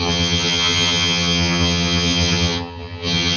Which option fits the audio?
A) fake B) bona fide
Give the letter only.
A